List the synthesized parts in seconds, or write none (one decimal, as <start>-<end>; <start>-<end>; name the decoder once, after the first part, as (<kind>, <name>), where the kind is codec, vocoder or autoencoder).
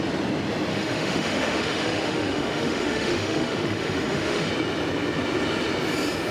0.7-4.5 (autoencoder, DAC-VAE)